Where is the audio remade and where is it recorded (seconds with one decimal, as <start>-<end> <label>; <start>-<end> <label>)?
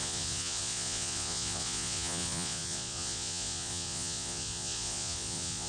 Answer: 0.0-5.7 remade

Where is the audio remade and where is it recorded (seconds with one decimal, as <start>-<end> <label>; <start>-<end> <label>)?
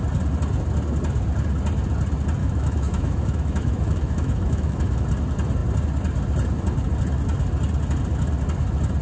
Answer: 0.0-2.4 recorded; 2.4-5.0 remade; 5.0-9.0 recorded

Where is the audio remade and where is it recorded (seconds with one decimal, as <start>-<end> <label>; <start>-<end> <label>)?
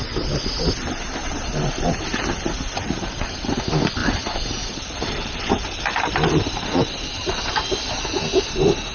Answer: 0.0-8.9 recorded